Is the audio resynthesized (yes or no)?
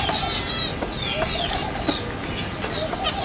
no